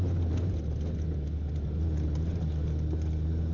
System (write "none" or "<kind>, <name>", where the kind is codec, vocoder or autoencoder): none